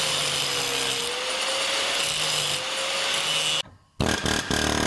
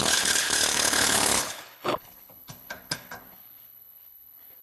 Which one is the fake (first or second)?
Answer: second